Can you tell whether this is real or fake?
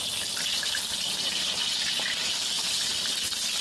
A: real